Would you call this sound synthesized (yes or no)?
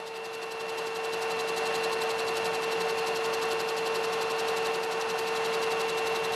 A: no